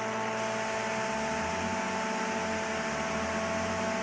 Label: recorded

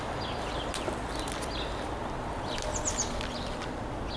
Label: recorded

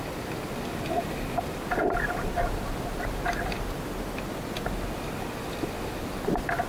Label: recorded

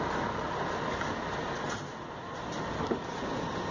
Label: recorded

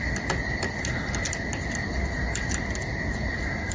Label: remade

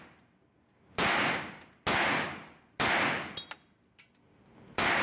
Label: recorded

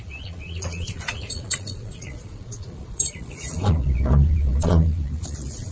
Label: remade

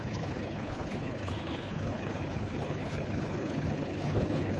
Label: remade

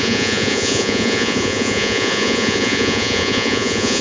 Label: remade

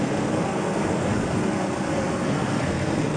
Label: remade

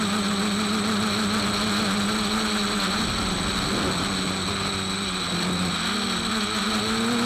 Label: recorded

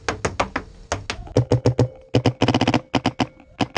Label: recorded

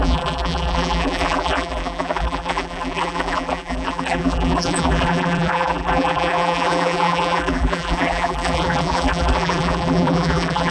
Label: remade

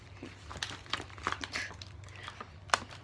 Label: recorded